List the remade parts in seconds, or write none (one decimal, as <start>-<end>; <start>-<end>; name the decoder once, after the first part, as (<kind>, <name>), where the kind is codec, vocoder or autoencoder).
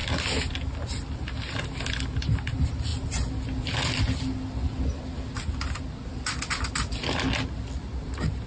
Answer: none